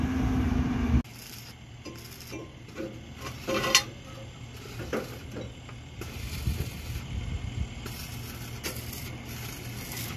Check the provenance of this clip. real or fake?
real